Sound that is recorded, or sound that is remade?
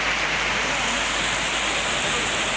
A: recorded